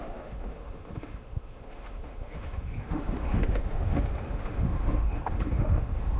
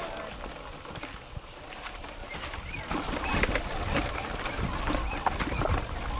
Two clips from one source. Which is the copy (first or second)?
first